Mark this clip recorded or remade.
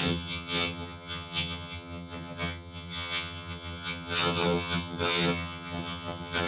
remade